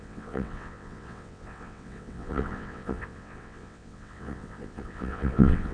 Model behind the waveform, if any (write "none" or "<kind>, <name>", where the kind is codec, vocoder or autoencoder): vocoder, WaveNeXt